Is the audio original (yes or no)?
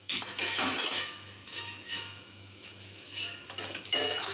no